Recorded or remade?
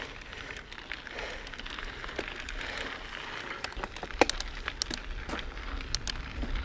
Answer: recorded